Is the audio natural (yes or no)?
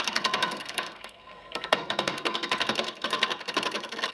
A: no